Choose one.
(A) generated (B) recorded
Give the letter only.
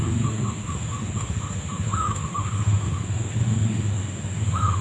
A